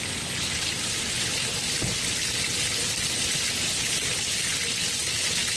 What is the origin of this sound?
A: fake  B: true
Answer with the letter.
B